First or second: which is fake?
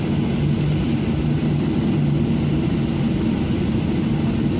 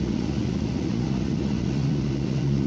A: second